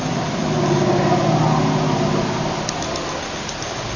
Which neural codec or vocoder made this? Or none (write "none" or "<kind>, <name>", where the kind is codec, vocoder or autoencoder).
none